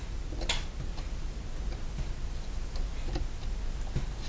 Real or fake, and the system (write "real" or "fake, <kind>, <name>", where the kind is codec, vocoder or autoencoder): real